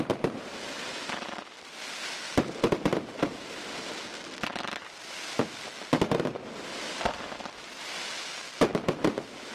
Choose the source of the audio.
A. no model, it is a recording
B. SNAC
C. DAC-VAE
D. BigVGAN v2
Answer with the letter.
A